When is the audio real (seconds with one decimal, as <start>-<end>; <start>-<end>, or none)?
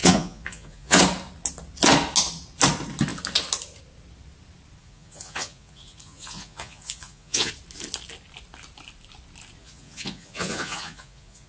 1.0-4.8; 7.5-9.6